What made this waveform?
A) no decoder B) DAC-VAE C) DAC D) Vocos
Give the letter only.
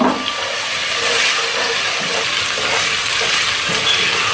A